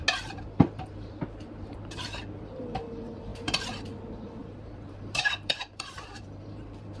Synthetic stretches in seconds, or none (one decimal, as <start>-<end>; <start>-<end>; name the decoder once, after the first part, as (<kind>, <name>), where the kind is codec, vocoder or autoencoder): 3.3-3.8 (vocoder, BigVGAN v2); 4.4-7.0